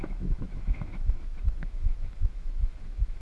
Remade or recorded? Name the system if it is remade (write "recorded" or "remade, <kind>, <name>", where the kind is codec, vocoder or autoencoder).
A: remade, autoencoder, DAC-VAE